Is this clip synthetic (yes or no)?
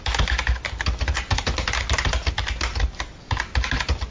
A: no